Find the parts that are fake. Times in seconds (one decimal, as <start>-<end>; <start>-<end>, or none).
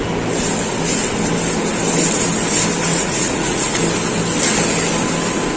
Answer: 2.9-3.8